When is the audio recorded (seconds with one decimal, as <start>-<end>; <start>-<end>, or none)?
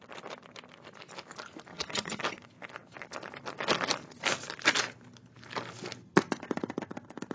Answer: 0.0-1.7; 2.2-7.3